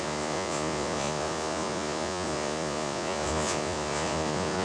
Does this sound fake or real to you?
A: fake